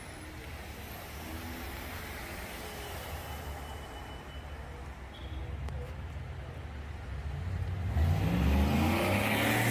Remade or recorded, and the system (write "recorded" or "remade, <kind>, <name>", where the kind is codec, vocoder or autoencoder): recorded